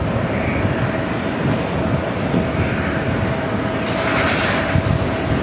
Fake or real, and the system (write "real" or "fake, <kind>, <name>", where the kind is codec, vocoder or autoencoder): real